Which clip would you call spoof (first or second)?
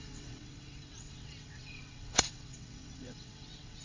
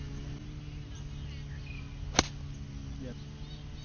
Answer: first